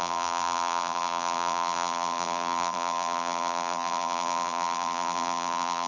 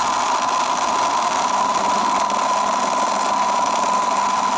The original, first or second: second